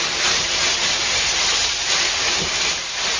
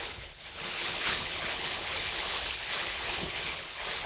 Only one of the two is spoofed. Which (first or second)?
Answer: second